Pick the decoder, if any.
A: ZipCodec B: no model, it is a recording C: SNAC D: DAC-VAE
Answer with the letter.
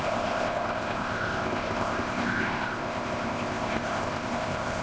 A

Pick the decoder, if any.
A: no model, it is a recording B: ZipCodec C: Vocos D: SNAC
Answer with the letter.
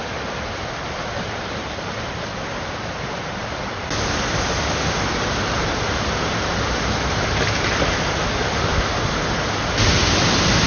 A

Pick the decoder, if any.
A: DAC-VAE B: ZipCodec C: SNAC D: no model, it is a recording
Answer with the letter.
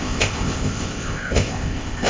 B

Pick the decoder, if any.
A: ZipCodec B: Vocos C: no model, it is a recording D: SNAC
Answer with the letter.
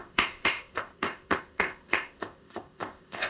A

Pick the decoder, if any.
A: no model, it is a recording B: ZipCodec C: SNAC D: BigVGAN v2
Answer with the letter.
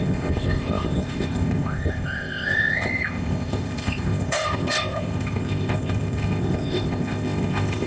B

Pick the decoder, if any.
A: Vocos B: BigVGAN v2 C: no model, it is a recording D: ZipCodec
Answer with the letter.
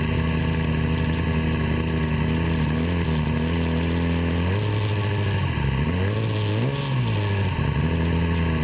C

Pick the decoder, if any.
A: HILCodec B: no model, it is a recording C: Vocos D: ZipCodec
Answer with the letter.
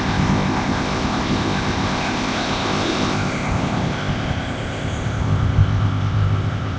D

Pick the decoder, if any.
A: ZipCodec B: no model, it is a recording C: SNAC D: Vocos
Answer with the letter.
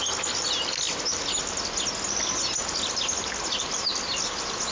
B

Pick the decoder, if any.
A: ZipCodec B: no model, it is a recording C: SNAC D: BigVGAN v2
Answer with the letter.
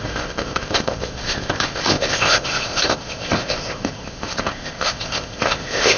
A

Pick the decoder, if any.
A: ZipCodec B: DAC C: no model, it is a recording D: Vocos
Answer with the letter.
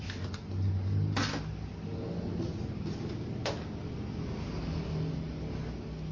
C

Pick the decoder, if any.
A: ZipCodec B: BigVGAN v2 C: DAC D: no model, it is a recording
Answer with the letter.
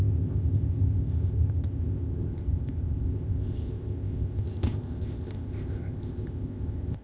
A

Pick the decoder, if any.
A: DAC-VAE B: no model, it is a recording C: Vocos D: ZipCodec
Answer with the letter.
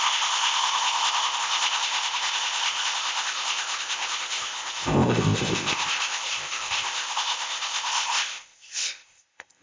D